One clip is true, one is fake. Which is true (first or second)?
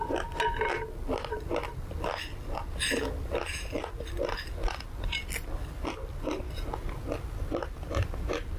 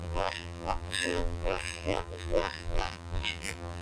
first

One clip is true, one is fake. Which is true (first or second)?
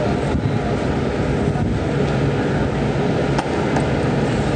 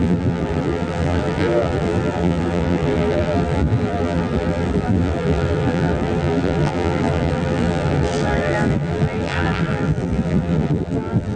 first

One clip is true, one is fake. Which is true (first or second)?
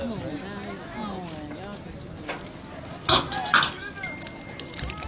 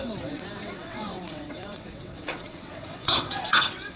first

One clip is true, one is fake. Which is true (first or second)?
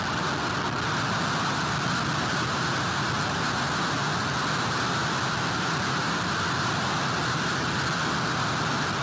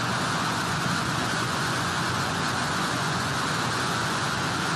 first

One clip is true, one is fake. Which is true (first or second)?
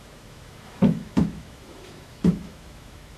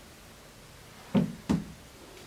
second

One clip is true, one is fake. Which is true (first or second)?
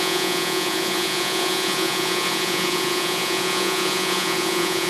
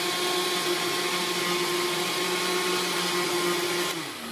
second